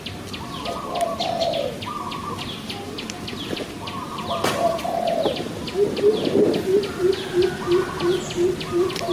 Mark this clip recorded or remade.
recorded